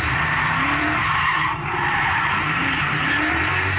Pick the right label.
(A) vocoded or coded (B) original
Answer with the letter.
A